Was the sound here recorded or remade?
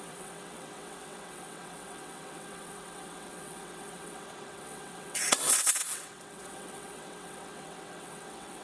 remade